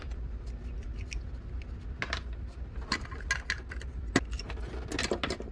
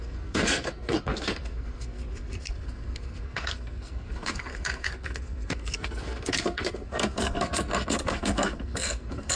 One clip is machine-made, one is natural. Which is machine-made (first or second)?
second